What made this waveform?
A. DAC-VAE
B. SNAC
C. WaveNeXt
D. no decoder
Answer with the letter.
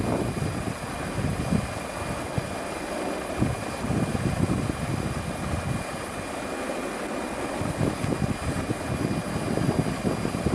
D